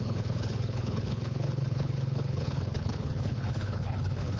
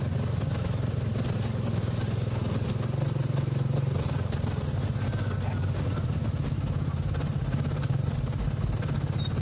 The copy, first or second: first